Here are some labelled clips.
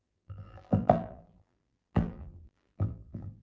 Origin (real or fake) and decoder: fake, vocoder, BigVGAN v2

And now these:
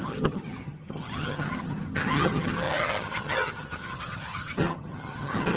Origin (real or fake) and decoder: fake, vocoder, HiFi-GAN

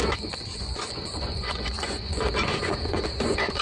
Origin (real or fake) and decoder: fake, vocoder, Vocos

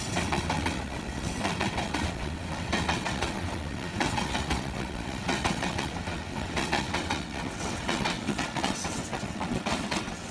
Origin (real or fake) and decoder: fake, vocoder, WaveNeXt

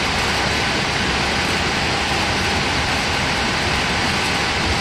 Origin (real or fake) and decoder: real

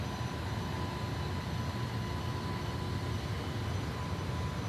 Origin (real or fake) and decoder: real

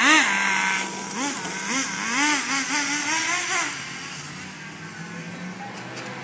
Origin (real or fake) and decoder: real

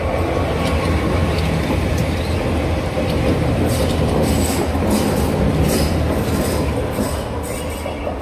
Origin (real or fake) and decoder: real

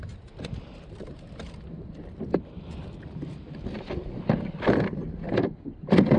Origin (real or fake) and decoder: real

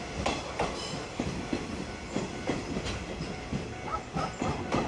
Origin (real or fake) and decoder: real